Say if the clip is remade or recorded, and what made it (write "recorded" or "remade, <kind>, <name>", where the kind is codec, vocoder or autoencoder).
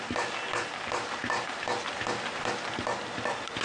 recorded